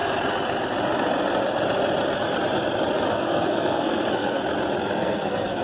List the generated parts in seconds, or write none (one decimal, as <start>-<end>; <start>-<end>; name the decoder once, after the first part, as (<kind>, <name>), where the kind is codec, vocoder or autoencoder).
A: 3.1-4.4 (codec, SNAC); 4.9-5.6